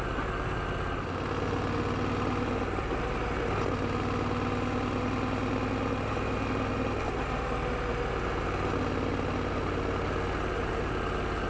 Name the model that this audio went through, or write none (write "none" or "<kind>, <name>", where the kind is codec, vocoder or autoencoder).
none